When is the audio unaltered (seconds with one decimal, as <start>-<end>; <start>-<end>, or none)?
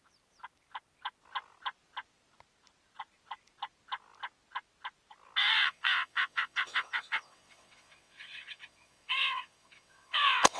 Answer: 0.0-5.4